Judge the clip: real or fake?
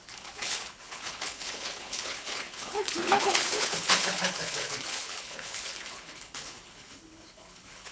fake